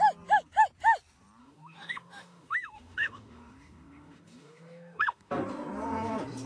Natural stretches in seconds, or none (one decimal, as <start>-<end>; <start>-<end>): 0.0-1.4; 5.3-6.5